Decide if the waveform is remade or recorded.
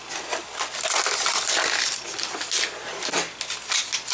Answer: recorded